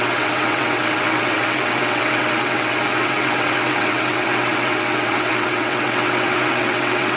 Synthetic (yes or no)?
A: yes